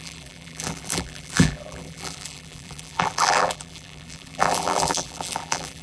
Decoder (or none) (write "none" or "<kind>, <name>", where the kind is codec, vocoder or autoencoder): vocoder, BigVGAN v2